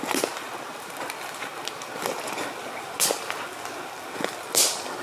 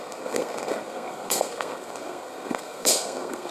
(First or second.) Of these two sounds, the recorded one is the first